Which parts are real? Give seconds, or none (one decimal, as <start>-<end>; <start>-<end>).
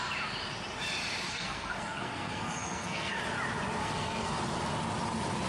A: 0.0-1.3; 3.2-3.8; 4.4-5.5